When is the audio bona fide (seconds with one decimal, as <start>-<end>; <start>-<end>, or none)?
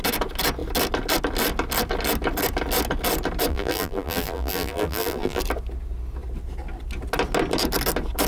0.0-3.5; 5.4-8.3